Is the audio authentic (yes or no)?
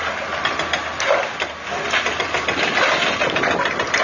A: yes